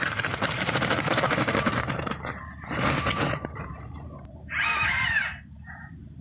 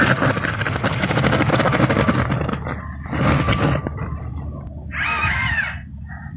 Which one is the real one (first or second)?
second